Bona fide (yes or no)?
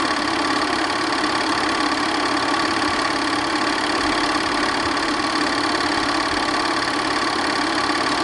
yes